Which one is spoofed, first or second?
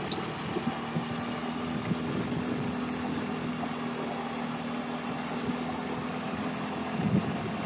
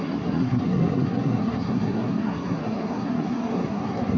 second